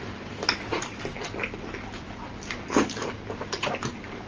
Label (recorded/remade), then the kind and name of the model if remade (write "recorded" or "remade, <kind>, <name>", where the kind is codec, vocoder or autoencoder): recorded